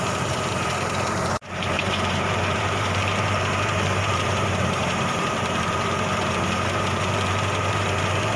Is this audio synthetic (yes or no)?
yes